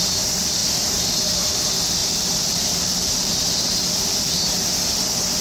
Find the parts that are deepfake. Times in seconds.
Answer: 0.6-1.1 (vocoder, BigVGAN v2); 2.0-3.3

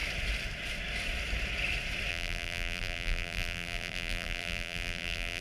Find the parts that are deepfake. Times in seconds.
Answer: 2.1-5.4 (vocoder, BigVGAN v2)

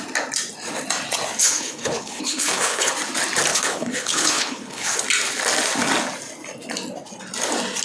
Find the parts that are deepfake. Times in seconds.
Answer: 1.4-2.9 (codec, HILCodec); 3.5-5.0

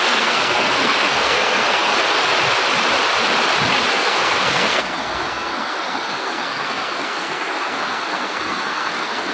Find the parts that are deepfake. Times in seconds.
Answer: 0.0-1.9 (codec, SNAC); 3.9-9.3

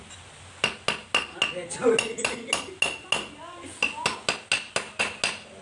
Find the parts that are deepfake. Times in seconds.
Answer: none

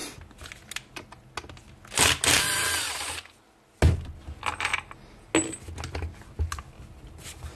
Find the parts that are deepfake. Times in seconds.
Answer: none

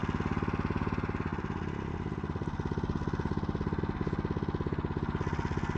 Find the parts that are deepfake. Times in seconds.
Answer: none